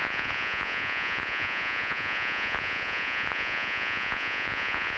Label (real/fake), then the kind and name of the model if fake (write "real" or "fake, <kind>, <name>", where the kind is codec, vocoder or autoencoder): fake, vocoder, Vocos